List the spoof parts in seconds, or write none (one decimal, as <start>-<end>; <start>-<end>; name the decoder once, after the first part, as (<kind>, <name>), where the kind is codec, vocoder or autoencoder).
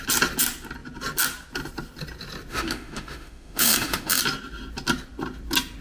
2.5-4.2 (autoencoder, DAC-VAE)